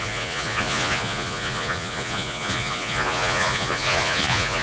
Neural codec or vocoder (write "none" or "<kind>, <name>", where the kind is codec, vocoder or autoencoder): vocoder, Vocos